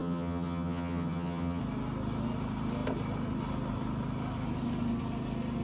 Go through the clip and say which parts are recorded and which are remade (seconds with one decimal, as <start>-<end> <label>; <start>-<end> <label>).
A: 0.0-1.6 remade; 1.6-5.6 recorded